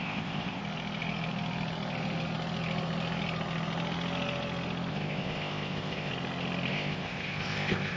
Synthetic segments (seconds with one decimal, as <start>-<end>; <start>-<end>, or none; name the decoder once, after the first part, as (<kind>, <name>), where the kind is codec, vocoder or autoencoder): 0.0-0.6 (codec, ZipCodec); 4.9-6.1; 6.7-8.0